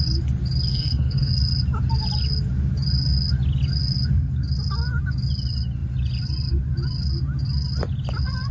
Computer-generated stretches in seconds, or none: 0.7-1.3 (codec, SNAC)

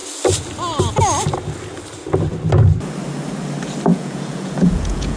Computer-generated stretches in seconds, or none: 3.9-5.2 (vocoder, Vocos)

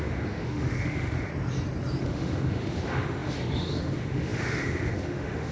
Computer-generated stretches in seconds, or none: 0.0-1.3 (autoencoder, DAC-VAE); 2.0-5.5

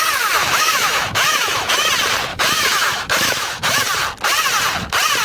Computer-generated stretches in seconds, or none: 0.4-1.9 (autoencoder, DAC-VAE); 2.3-3.8